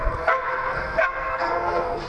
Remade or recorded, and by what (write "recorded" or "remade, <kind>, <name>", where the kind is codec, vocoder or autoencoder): remade, codec, SNAC